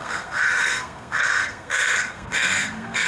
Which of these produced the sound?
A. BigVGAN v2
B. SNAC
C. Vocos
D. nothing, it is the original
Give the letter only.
B